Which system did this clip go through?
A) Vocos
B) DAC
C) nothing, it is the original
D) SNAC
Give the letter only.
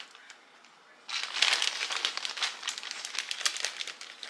C